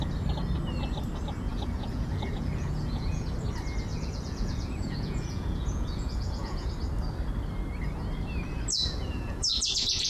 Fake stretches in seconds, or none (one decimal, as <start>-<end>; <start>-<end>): 1.5-3.3; 3.9-6.7; 8.7-10.1